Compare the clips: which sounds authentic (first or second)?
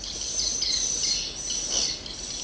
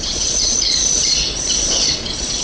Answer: first